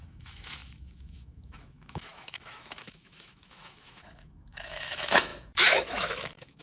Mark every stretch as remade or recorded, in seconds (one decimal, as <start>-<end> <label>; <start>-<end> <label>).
0.0-6.6 remade